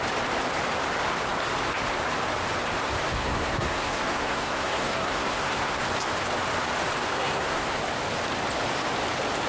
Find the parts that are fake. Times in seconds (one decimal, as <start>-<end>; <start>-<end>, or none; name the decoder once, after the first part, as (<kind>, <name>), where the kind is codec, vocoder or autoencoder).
3.2-5.8 (codec, SNAC); 7.1-7.8